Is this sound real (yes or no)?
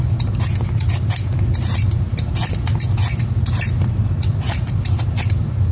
yes